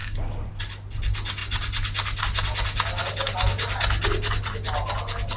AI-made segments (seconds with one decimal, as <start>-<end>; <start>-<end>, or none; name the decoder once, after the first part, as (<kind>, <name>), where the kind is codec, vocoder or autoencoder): 0.0-0.5 (codec, DAC)